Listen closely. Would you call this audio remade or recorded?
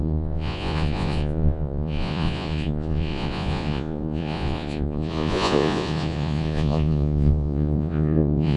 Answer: remade